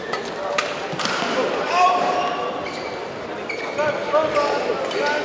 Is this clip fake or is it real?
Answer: real